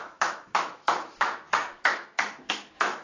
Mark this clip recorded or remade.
remade